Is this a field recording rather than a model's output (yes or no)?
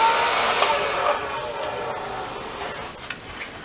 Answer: yes